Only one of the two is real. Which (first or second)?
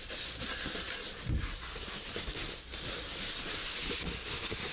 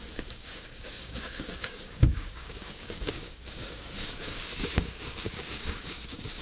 first